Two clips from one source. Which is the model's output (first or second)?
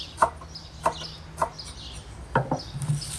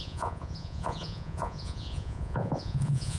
second